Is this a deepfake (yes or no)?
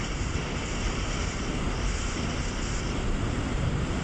no